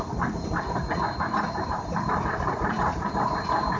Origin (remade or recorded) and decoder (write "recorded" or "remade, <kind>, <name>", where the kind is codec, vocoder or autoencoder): recorded